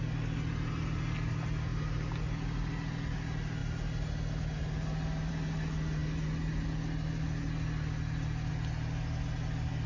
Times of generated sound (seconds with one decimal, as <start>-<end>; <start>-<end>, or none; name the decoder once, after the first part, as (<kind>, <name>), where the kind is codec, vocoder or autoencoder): none